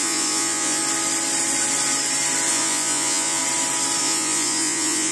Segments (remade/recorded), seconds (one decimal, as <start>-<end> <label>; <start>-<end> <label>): 0.0-0.8 remade; 0.8-2.5 recorded; 2.5-3.4 remade; 3.4-4.0 recorded; 4.0-5.1 remade